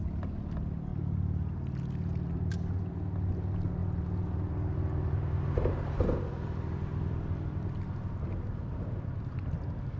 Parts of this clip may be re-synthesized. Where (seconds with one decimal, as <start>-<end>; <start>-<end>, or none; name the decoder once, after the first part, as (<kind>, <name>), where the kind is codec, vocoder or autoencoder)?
none